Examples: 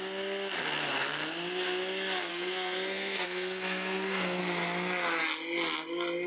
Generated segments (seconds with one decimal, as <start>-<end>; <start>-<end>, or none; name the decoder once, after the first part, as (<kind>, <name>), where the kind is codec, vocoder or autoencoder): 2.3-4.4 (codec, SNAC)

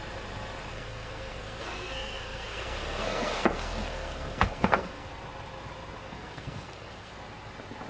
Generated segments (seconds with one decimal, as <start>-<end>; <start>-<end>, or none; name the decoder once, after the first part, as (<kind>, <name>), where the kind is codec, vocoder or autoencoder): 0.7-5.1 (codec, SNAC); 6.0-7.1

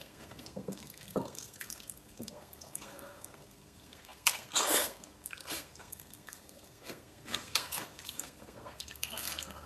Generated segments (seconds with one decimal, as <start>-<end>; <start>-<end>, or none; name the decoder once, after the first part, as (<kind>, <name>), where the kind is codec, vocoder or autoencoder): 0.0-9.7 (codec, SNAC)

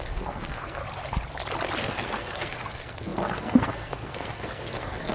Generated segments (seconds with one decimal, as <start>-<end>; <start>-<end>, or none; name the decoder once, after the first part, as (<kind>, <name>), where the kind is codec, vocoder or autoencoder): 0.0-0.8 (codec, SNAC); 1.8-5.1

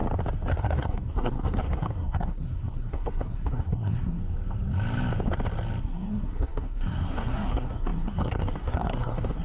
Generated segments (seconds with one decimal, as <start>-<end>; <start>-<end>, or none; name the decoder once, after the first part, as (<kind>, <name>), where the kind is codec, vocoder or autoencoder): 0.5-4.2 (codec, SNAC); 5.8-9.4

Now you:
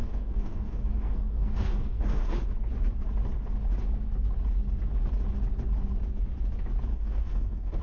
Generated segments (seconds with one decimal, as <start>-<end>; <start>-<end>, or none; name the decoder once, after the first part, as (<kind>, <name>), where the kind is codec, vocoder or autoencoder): 0.0-2.3 (codec, SNAC); 6.9-7.8